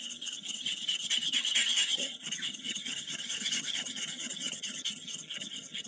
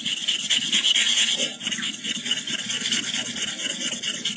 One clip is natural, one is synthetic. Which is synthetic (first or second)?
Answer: first